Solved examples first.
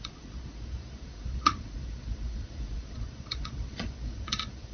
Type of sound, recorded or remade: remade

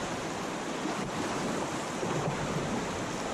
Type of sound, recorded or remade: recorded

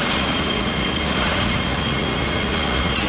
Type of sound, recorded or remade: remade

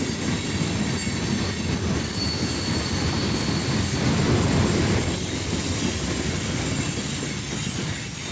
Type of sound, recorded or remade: recorded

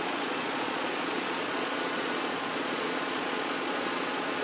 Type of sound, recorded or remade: remade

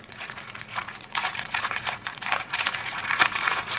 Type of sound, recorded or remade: remade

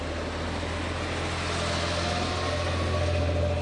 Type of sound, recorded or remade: recorded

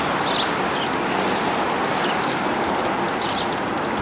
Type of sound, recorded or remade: recorded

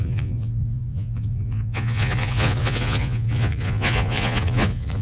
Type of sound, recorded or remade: remade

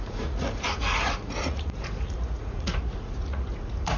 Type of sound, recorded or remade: remade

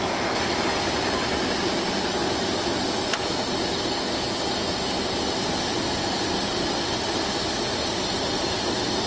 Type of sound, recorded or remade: recorded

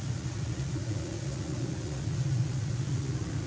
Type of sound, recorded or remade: remade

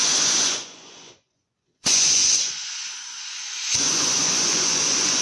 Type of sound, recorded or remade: remade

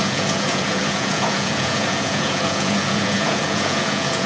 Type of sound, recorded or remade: remade